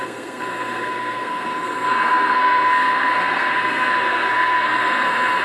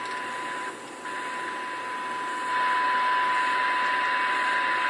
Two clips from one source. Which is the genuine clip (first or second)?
second